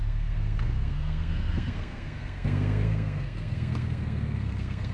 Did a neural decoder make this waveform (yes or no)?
yes